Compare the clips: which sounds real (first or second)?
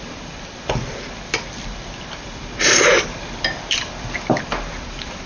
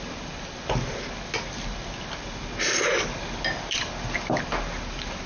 second